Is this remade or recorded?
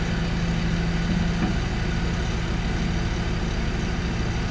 recorded